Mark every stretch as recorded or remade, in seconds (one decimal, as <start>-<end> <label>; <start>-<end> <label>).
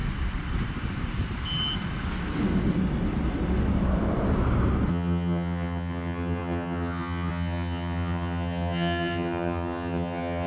0.0-4.9 recorded; 4.9-10.5 remade